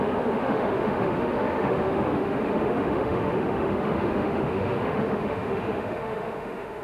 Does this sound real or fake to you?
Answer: fake